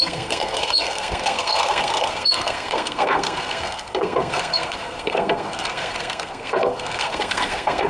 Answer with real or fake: fake